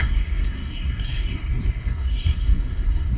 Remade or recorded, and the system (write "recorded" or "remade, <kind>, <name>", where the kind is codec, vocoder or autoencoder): remade, codec, SNAC